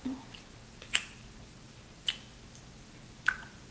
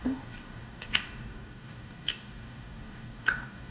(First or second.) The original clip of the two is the first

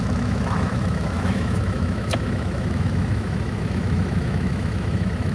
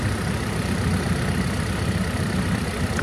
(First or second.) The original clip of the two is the second